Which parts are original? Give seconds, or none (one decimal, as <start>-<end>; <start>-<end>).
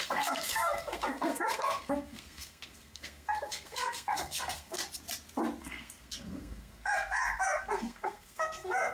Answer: 4.8-5.6